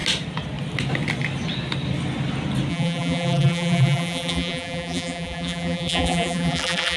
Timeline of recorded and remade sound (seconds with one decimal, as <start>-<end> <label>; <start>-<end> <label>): 0.0-2.7 recorded; 2.7-7.0 remade